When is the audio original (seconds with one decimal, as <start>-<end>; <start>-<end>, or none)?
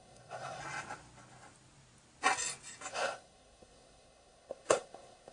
0.6-2.9